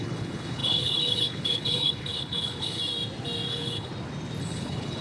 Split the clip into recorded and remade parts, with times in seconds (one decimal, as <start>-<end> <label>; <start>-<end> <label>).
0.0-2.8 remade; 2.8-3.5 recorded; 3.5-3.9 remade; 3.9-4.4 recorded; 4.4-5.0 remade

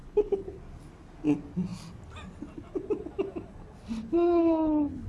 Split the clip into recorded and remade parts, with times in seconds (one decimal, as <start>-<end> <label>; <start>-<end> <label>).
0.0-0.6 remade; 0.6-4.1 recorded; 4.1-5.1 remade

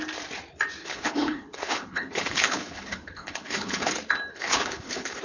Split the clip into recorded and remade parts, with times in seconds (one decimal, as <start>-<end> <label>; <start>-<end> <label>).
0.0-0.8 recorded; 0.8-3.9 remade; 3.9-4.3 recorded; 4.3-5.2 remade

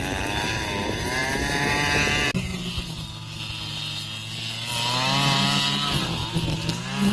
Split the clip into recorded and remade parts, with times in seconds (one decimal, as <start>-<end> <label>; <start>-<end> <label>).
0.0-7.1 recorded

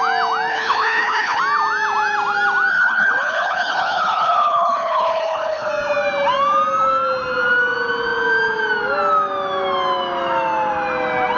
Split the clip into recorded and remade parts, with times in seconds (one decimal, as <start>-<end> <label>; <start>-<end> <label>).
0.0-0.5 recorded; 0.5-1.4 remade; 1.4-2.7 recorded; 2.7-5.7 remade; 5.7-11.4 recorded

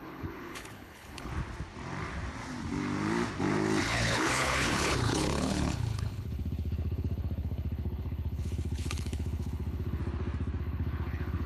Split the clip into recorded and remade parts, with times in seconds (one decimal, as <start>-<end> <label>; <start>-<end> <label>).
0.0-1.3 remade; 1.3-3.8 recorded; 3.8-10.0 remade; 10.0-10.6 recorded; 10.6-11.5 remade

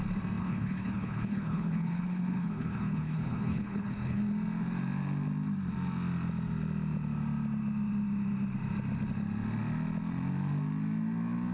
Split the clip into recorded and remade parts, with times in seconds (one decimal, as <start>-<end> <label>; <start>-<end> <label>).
0.0-0.4 recorded; 0.4-4.2 remade; 4.2-11.5 recorded

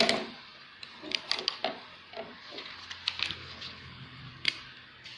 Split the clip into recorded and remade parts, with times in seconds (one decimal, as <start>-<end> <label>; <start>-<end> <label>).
0.0-3.4 recorded; 3.4-4.2 remade; 4.2-5.2 recorded